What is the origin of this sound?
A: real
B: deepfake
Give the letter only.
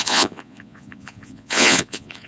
B